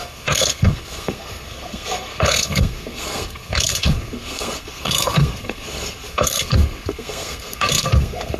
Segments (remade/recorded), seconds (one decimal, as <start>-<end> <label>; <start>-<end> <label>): 0.0-8.4 remade